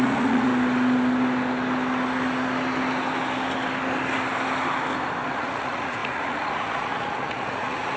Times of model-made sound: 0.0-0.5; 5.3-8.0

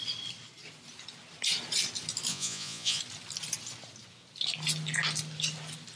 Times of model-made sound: 2.3-3.0

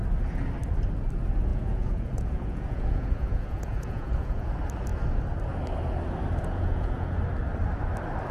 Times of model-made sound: 1.5-4.5; 6.4-7.2

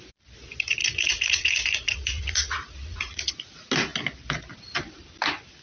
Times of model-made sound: 0.8-3.3

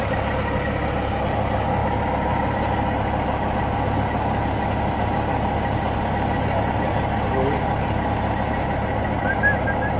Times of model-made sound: none

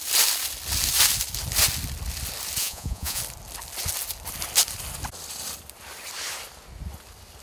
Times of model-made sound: 2.6-3.2

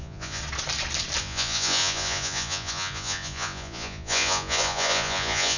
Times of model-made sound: 0.0-0.4; 1.2-5.6

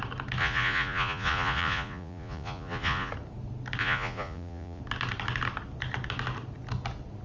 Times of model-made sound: 0.4-3.1; 3.8-4.8